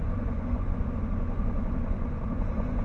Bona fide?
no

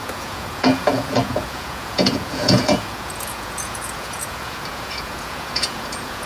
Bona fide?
no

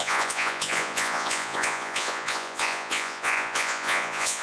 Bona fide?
no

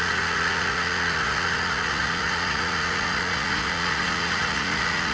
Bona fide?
no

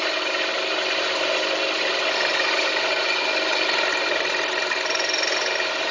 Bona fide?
yes